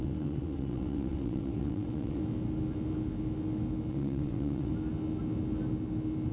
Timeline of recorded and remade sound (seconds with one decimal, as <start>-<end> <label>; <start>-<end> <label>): 0.0-2.2 remade; 2.2-3.9 recorded; 3.9-4.7 remade; 4.7-6.3 recorded